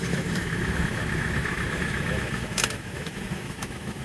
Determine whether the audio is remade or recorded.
remade